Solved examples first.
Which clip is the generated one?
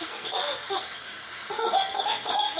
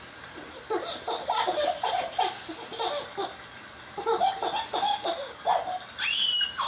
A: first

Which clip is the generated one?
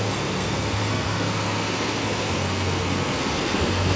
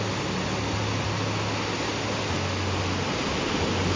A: first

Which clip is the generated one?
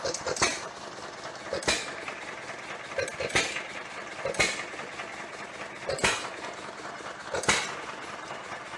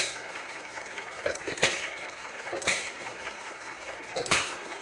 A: second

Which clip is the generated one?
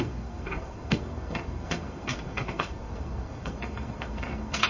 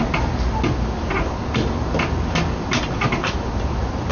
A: first